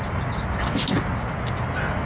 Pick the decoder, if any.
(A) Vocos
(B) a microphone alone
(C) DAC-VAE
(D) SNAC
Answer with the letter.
B